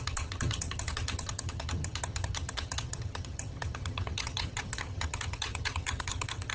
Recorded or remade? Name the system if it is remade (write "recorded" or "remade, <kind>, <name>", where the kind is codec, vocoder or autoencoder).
remade, vocoder, HiFi-GAN